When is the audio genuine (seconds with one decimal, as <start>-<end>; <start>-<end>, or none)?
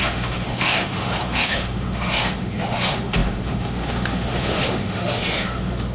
none